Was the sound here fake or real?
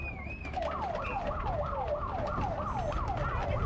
real